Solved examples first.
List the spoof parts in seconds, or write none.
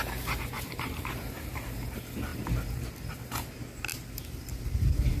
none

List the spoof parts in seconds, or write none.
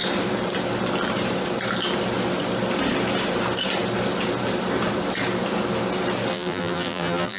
6.3-7.4 (vocoder, BigVGAN v2)